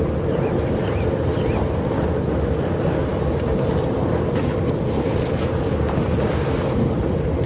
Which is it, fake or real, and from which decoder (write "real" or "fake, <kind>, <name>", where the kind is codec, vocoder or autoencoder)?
fake, vocoder, BigVGAN v2